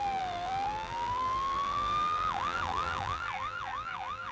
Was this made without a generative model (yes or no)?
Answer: no